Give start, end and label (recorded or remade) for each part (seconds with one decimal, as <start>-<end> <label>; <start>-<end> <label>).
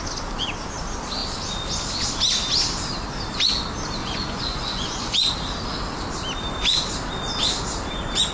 0.0-4.0 recorded; 4.0-5.3 remade; 5.3-8.3 recorded